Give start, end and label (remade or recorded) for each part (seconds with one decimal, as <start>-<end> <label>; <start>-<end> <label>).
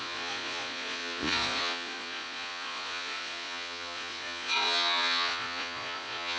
0.0-6.4 remade